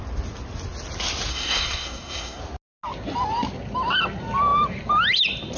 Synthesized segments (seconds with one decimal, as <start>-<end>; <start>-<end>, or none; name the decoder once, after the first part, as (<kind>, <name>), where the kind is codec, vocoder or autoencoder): 1.3-2.4 (codec, SNAC)